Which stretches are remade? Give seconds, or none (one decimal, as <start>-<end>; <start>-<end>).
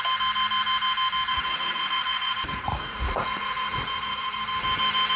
1.3-4.4